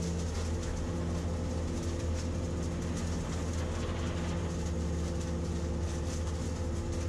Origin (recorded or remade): recorded